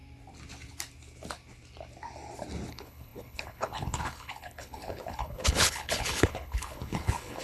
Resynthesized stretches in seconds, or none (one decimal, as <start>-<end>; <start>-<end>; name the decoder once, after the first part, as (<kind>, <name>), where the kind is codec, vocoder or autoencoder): 2.7-7.4 (codec, HILCodec)